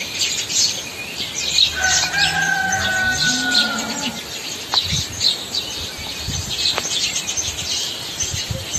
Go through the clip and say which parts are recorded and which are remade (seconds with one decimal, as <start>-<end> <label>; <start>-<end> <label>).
0.0-8.8 recorded

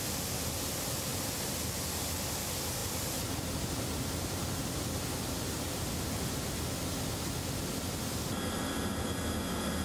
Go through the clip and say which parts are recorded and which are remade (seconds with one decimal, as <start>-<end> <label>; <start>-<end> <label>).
0.0-1.1 recorded; 1.1-1.6 remade; 1.6-2.8 recorded; 2.8-6.6 remade; 6.6-9.8 recorded

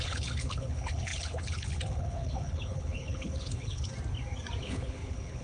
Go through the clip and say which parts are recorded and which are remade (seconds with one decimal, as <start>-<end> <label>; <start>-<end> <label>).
0.0-3.9 remade; 3.9-4.6 recorded; 4.6-5.4 remade

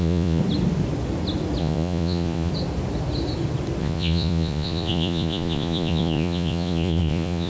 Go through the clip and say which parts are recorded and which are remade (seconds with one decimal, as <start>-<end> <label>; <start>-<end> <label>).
0.0-0.4 remade; 0.4-1.6 recorded; 1.6-2.5 remade; 2.5-3.8 recorded; 3.8-7.5 remade

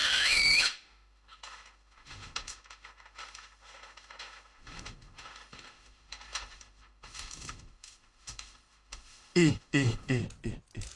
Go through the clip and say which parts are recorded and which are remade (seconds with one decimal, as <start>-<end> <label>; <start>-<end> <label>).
0.0-10.2 remade; 10.2-11.0 recorded

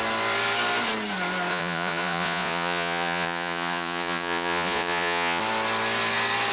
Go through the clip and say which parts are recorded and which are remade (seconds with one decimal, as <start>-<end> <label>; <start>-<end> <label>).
0.0-1.5 recorded; 1.5-5.4 remade; 5.4-6.5 recorded

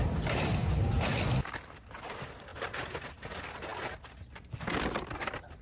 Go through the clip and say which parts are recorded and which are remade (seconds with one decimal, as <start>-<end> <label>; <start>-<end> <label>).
0.0-5.6 recorded